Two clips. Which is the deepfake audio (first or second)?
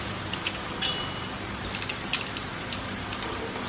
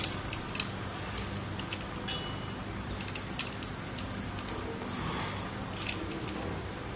first